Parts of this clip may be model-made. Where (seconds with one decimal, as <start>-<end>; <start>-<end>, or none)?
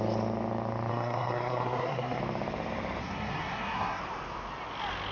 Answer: 0.9-2.2; 3.0-4.0